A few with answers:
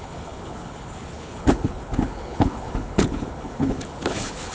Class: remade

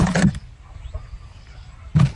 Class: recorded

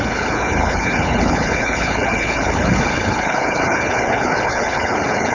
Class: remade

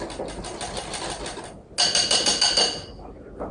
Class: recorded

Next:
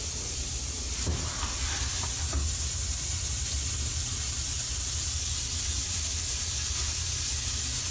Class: recorded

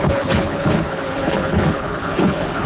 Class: remade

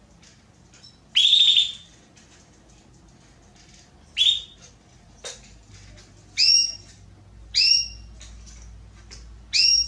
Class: recorded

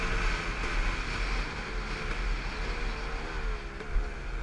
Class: recorded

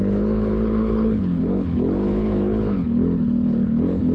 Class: remade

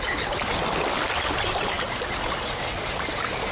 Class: recorded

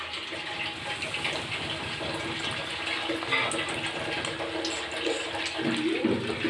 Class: recorded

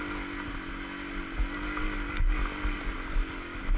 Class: recorded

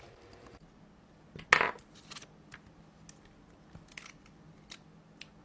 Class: recorded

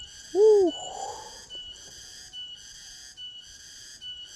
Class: recorded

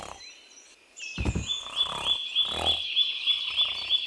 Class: recorded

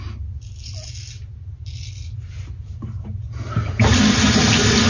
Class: recorded